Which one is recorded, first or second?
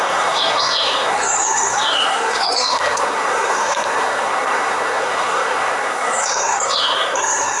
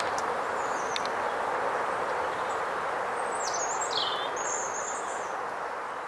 second